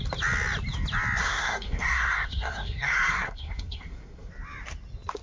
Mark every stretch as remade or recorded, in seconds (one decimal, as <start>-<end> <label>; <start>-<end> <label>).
0.0-1.2 recorded; 1.2-4.3 remade; 4.3-5.2 recorded